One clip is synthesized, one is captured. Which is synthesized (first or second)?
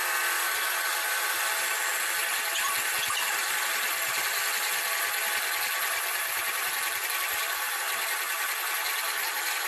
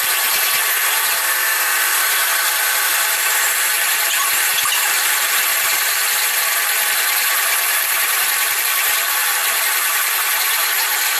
second